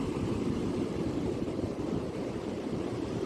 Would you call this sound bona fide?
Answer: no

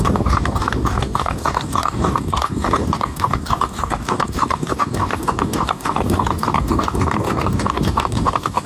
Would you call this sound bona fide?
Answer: no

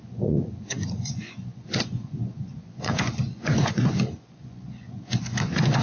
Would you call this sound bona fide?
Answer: no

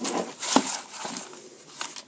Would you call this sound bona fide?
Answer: yes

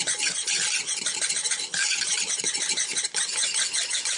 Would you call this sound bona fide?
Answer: yes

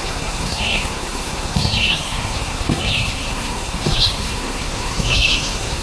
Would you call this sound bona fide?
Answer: no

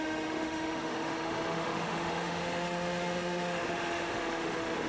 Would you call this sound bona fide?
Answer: no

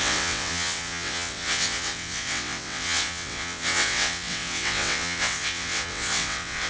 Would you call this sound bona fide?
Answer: no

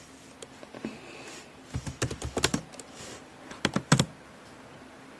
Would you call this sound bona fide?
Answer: yes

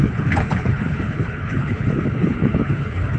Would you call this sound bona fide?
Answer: no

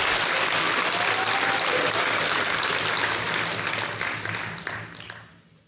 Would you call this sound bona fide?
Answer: yes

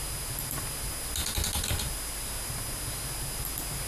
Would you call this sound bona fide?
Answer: yes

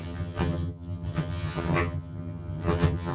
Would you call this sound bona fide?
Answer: no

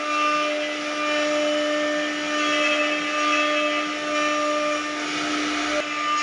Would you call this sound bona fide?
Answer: yes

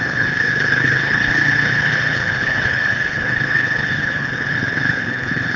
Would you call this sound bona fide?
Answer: no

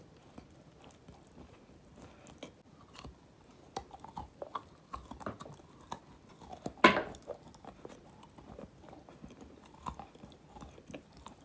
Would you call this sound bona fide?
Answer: yes